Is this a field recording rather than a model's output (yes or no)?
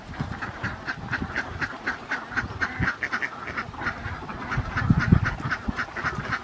yes